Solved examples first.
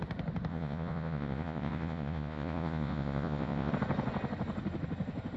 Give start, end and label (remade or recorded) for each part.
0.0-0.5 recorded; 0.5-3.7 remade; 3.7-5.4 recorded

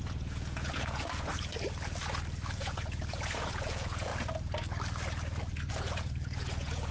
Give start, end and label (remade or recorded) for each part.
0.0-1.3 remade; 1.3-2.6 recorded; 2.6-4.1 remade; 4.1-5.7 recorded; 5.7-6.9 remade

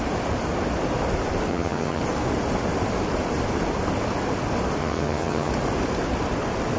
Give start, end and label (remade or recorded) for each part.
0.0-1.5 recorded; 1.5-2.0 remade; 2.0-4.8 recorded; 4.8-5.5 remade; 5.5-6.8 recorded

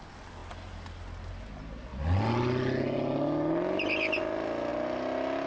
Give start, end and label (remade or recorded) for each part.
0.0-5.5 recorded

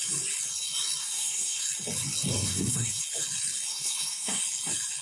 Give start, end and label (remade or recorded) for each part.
0.0-1.0 recorded; 1.0-1.6 remade; 1.6-2.3 recorded; 2.3-3.0 remade; 3.0-3.7 recorded; 3.7-4.4 remade; 4.4-5.0 recorded

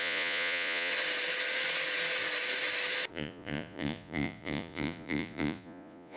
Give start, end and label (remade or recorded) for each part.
0.0-0.9 remade; 0.9-3.1 recorded; 3.1-6.2 remade

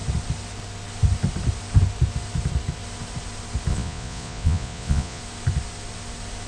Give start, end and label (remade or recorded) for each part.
0.0-3.7 recorded; 3.7-5.2 remade; 5.2-6.5 recorded